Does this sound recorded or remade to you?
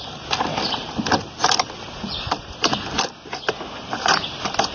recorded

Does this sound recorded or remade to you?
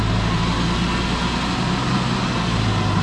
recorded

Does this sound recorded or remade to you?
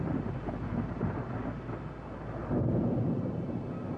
recorded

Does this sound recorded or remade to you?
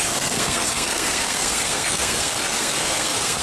remade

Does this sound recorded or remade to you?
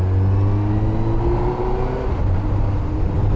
recorded